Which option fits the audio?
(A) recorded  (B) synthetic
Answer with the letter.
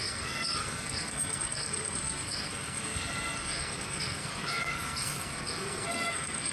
B